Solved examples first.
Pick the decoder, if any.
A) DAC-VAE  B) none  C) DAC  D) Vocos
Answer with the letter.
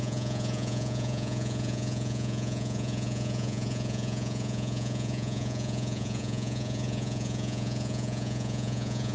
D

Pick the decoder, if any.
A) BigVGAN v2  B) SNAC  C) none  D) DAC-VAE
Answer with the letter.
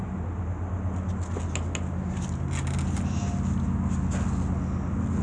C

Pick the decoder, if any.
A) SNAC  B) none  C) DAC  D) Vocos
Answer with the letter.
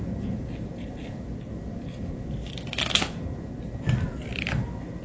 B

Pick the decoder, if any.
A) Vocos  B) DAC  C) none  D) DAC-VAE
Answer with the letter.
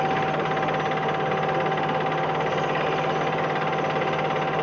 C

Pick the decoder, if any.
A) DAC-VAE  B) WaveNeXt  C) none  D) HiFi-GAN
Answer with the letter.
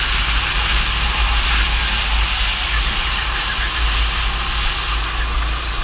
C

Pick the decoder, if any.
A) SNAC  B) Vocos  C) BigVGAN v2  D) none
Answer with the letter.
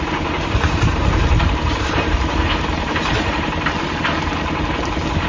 C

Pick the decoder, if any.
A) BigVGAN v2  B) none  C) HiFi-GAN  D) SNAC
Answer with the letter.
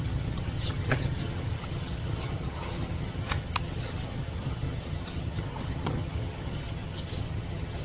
C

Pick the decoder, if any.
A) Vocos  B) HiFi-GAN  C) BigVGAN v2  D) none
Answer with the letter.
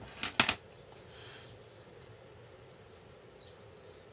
D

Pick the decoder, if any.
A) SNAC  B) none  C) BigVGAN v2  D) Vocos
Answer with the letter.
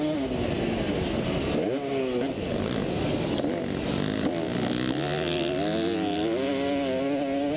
B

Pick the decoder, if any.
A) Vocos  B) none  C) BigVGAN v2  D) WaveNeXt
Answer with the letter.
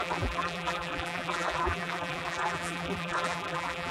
C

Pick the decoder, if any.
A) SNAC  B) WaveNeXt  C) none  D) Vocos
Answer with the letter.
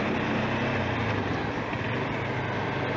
C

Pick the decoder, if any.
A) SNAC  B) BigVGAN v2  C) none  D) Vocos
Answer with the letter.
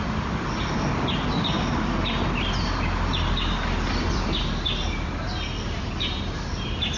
C